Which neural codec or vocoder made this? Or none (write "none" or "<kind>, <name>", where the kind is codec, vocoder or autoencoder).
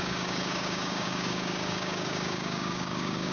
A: codec, DAC